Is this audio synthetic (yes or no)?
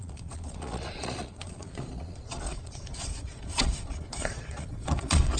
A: yes